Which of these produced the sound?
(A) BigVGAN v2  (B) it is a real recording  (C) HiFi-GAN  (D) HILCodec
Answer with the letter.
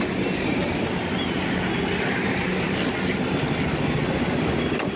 B